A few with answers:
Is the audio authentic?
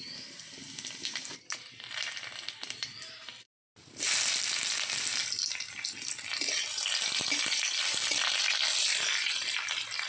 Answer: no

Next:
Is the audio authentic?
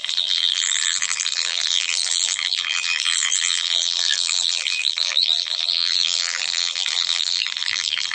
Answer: no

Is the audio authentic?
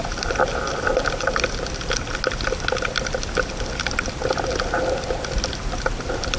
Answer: yes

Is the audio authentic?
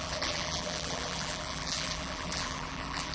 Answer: no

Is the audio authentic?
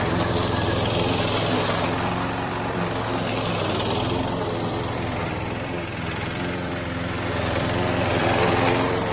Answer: no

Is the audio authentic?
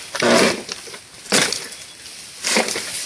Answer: yes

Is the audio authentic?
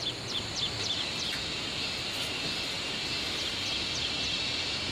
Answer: yes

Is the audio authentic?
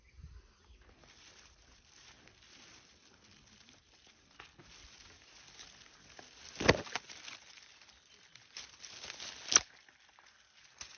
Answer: yes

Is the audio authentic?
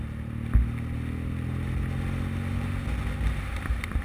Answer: yes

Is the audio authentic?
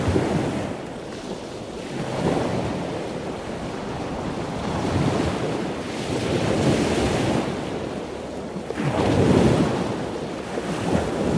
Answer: yes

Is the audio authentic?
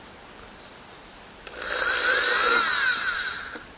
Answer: no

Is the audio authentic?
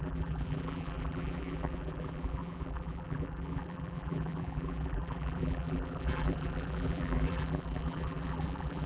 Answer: no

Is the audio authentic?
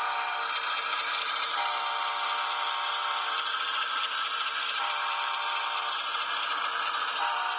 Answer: no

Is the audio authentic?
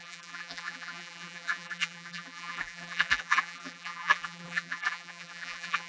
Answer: no